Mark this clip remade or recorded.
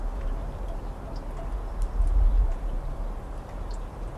recorded